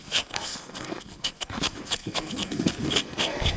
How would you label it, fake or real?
fake